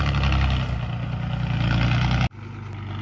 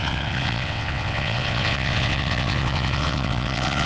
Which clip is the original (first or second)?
first